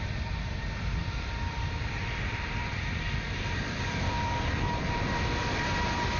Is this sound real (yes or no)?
no